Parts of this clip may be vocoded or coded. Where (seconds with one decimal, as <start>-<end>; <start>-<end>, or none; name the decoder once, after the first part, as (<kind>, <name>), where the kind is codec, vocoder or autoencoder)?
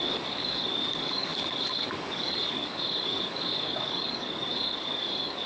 0.0-5.5 (codec, DAC)